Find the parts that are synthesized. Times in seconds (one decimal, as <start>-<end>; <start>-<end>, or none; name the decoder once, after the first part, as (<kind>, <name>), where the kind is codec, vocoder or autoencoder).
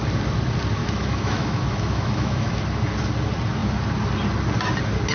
0.8-2.5 (autoencoder, DAC-VAE)